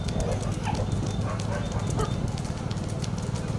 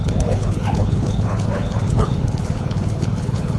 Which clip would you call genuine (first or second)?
first